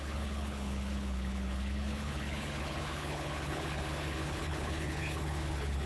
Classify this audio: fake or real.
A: fake